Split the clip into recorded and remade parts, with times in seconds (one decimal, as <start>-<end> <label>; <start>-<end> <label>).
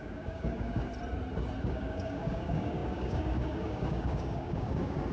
0.0-0.9 remade; 0.9-1.6 recorded; 1.6-5.1 remade